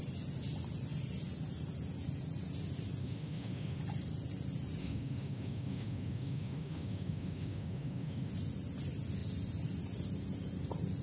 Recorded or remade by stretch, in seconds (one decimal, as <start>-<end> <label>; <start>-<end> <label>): 0.0-3.0 recorded; 3.0-3.8 remade; 3.8-4.8 recorded; 4.8-8.3 remade; 8.3-11.0 recorded